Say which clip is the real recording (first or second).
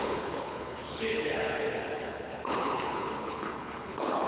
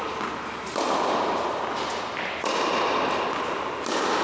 second